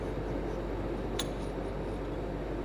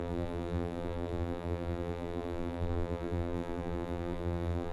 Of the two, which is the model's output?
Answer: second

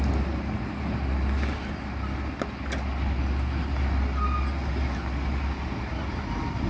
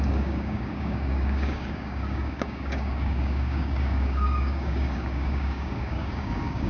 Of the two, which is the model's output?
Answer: second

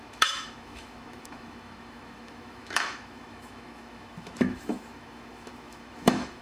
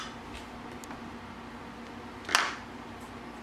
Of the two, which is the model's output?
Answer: first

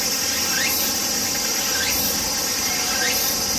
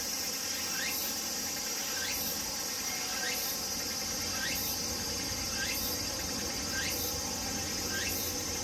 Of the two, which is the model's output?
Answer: first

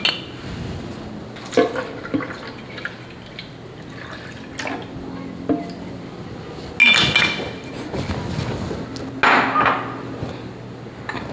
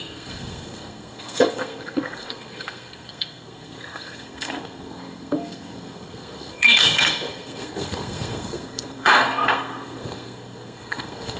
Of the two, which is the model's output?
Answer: second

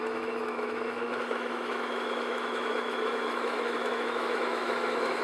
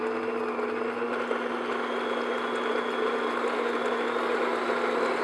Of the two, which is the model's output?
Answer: first